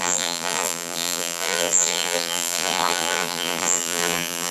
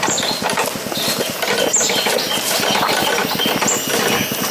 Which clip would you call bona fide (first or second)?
second